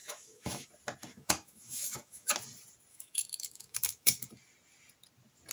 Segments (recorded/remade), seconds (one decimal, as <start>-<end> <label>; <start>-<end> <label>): 0.0-0.7 remade; 0.7-1.1 recorded; 1.1-2.3 remade; 2.3-2.9 recorded; 2.9-4.3 remade; 4.3-5.5 recorded